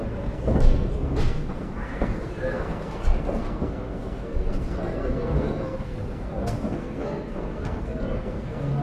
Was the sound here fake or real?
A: fake